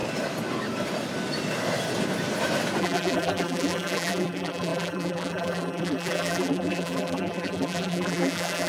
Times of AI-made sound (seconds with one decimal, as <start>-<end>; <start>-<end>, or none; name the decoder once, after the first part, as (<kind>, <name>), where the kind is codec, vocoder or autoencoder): 2.8-8.7 (vocoder, BigVGAN v2)